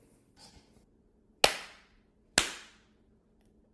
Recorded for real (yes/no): yes